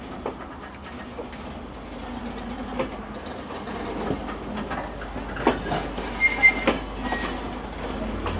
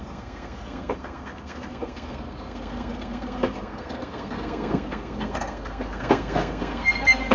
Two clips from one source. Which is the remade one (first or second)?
second